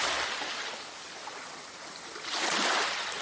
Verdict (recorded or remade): recorded